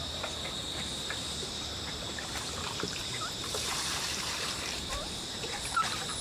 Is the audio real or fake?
fake